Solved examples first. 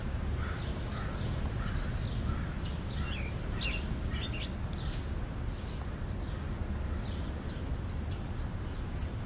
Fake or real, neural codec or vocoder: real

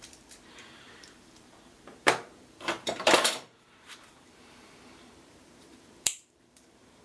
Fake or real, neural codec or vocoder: fake, vocoder, BigVGAN v2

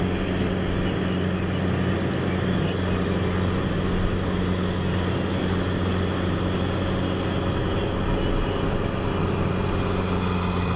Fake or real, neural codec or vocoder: real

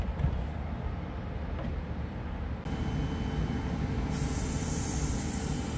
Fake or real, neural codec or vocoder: real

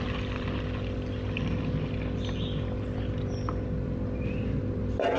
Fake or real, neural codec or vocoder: real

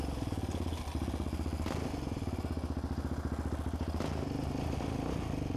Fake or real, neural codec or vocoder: real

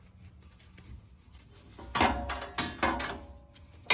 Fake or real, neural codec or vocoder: real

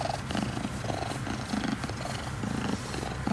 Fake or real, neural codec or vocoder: real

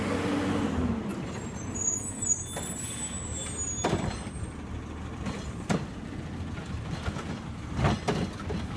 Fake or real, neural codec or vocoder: real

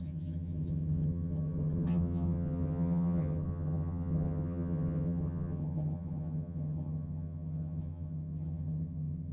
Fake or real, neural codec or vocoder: fake, vocoder, HiFi-GAN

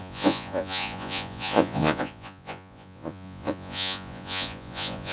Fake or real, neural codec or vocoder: fake, vocoder, Vocos